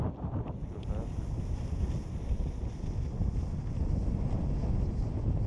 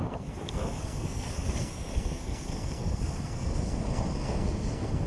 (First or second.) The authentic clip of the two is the first